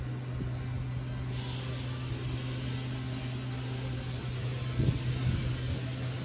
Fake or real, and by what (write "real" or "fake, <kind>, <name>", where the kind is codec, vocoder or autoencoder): real